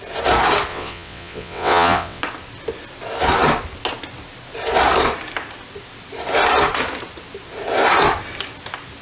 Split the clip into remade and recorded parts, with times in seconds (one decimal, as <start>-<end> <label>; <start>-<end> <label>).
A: 0.0-0.7 recorded; 0.7-2.2 remade; 2.2-9.0 recorded